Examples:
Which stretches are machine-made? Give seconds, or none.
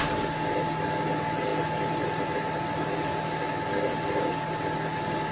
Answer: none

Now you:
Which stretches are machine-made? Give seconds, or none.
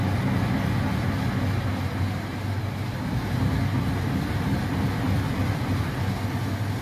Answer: 1.7-2.5 (vocoder, BigVGAN v2)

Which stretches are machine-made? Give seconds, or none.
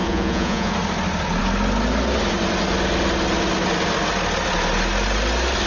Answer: 0.0-0.7 (vocoder, Vocos)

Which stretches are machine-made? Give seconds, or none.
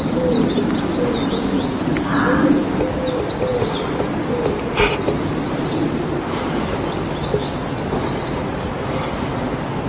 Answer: none